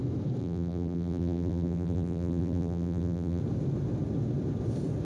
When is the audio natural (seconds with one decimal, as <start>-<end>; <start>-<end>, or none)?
0.0-0.4; 3.4-5.0